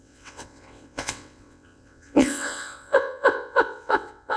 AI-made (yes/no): yes